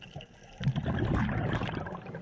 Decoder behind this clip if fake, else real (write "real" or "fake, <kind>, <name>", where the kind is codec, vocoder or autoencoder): real